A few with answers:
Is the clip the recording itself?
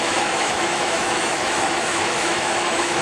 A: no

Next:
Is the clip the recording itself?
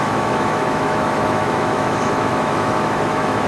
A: no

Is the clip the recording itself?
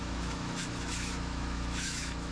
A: no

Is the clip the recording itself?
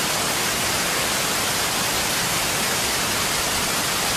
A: yes